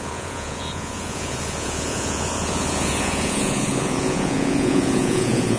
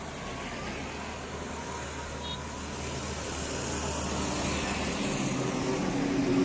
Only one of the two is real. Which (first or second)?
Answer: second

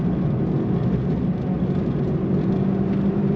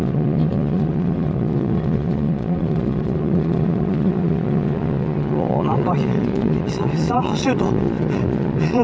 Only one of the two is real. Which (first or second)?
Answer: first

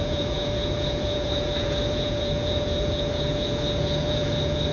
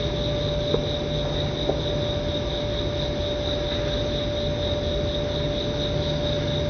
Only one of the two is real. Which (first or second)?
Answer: second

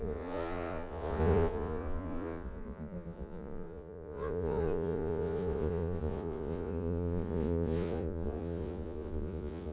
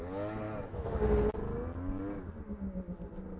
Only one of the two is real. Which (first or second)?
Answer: second